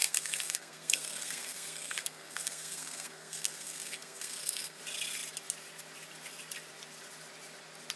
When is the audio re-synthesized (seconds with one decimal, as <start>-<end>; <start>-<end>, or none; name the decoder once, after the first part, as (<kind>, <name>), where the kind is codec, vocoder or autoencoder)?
0.0-4.8 (codec, SNAC)